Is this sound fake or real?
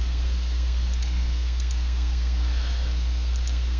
fake